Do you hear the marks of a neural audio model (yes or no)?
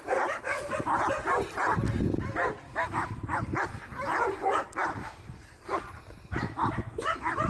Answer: no